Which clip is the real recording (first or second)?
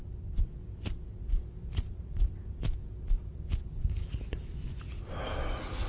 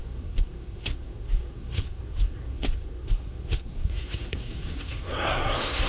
first